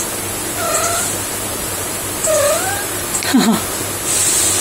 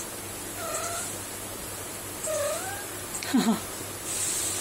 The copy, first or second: first